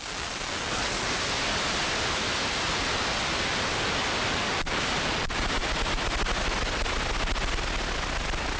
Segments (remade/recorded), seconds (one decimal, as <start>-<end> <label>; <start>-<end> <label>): 0.0-8.6 recorded